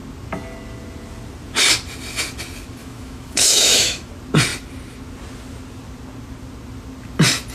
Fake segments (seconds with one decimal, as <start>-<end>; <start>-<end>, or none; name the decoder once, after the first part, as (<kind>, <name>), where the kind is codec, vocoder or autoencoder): 2.8-4.1 (autoencoder, DAC-VAE)